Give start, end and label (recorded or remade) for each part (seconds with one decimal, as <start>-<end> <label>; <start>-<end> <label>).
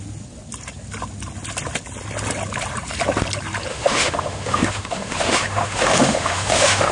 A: 0.0-3.7 recorded; 3.7-6.9 remade